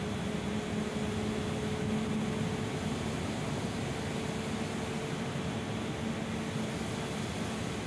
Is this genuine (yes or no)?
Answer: yes